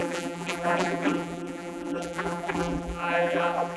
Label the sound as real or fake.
fake